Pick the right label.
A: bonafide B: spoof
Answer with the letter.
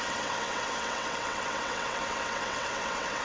B